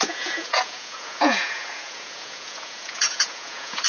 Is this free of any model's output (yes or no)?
no